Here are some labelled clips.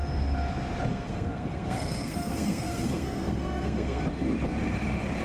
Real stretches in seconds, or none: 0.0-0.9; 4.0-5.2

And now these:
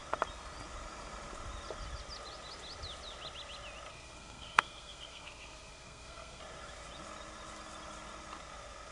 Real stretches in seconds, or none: 0.0-3.9; 6.4-8.9

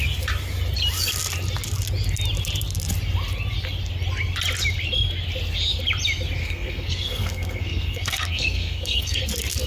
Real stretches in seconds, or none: 0.0-6.4; 9.2-9.7

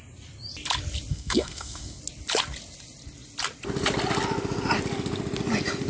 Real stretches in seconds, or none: 0.0-1.1; 2.0-5.9

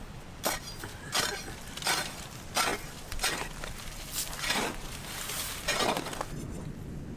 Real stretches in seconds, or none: 0.0-7.2